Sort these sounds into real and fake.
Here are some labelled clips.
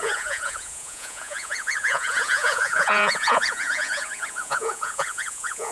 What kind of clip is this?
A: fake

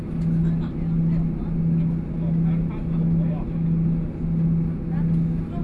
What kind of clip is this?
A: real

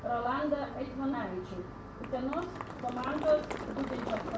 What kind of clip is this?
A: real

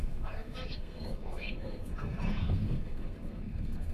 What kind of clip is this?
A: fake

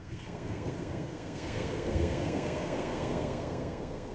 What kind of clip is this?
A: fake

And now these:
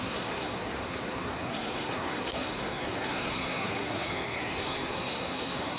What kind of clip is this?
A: fake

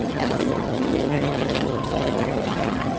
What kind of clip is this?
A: fake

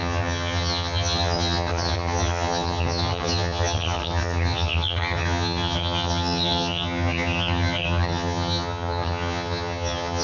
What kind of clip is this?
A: fake